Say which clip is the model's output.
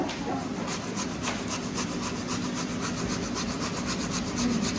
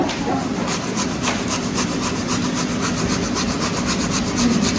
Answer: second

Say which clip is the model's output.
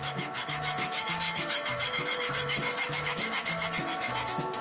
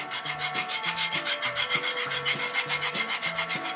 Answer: first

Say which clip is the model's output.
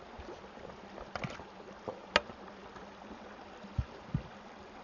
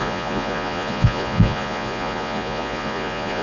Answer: second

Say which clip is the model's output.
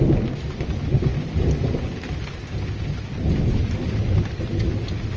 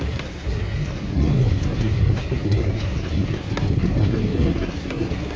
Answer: second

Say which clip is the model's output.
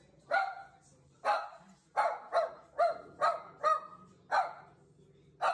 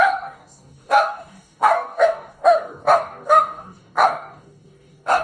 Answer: second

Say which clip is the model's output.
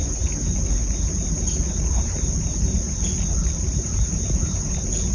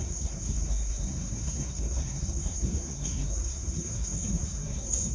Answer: second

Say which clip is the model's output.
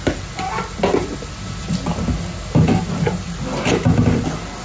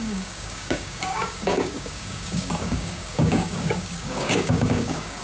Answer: second